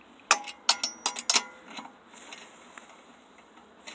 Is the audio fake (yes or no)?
no